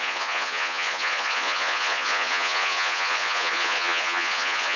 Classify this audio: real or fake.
fake